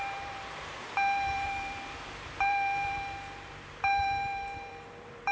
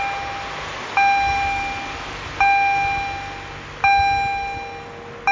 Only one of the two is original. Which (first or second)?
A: second